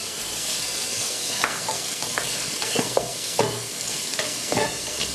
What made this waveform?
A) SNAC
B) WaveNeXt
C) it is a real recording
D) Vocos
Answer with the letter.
A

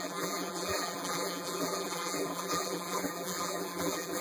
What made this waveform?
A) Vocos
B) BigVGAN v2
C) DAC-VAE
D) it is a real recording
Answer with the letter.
B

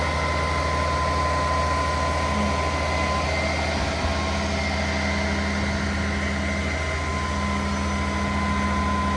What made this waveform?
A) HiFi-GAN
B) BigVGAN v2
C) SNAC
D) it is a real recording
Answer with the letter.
D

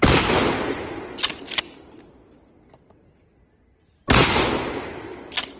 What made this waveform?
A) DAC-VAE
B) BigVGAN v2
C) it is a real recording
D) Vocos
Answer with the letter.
C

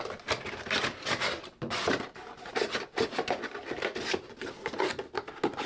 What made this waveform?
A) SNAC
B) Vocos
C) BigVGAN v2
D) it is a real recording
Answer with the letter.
D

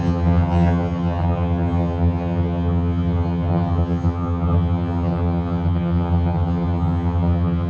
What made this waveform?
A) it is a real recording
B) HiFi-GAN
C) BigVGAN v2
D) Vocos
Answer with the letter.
B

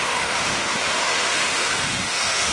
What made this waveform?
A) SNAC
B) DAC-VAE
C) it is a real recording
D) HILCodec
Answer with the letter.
B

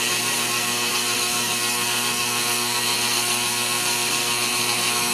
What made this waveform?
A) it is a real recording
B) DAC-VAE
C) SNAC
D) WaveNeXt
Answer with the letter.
C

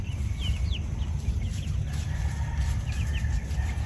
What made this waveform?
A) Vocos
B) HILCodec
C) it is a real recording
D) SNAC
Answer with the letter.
C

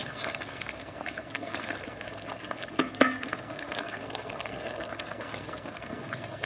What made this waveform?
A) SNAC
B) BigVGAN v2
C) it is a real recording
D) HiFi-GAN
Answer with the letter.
A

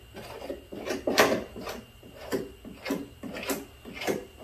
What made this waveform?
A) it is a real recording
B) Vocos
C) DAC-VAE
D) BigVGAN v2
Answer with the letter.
A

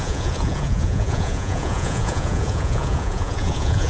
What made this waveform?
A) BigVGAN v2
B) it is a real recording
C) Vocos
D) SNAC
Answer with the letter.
C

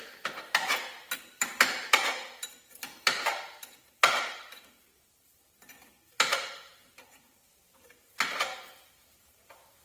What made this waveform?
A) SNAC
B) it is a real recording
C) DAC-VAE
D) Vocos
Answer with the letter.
B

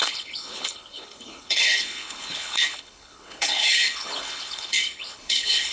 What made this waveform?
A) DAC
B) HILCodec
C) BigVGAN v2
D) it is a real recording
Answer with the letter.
B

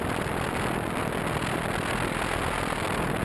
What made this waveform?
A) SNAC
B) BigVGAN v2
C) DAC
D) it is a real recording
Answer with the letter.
D